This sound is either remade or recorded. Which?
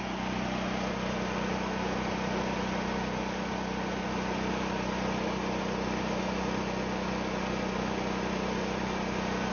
recorded